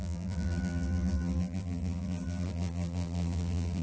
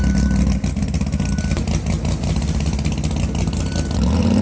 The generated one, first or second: first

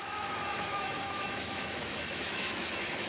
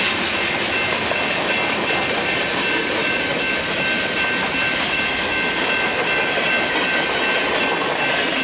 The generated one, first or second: first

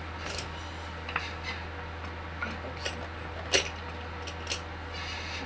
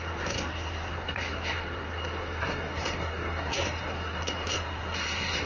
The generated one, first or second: second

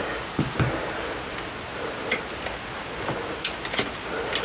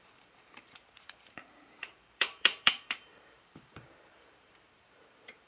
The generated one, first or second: second